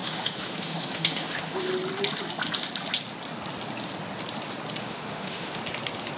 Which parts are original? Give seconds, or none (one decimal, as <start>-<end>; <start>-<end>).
1.7-4.8; 5.6-6.2